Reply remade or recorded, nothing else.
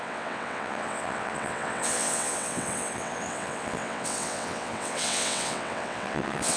remade